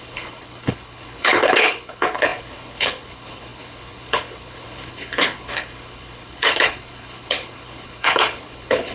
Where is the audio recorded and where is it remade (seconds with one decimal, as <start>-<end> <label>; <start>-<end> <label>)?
0.0-8.9 remade